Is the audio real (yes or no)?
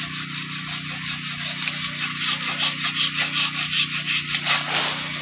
yes